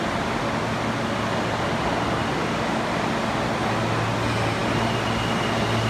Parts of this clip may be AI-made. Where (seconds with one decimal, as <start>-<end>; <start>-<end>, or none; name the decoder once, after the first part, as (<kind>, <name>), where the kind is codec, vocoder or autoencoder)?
none